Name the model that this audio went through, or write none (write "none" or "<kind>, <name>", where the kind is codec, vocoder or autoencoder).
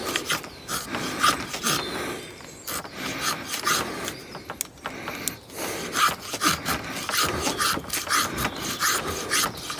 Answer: none